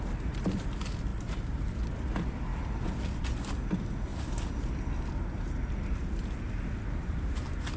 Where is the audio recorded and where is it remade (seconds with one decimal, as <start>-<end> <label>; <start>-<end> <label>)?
0.0-2.5 recorded; 2.5-3.3 remade; 3.3-7.8 recorded